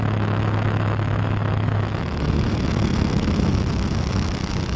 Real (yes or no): no